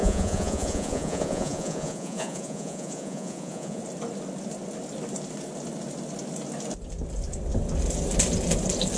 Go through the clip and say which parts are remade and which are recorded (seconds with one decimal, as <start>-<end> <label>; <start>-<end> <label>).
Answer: 0.0-3.8 remade; 3.8-9.0 recorded